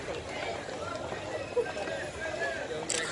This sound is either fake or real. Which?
real